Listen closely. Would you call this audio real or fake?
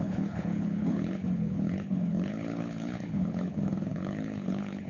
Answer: fake